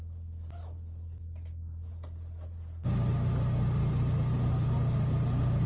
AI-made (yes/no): no